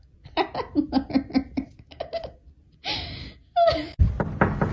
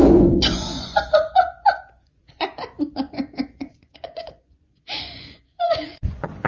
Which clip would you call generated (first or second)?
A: second